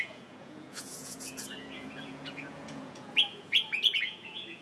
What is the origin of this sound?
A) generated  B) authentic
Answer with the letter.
A